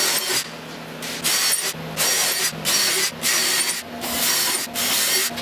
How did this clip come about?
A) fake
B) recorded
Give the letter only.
B